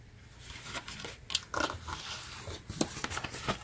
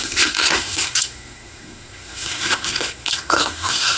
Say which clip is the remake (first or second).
second